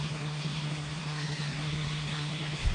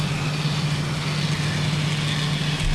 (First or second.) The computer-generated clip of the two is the first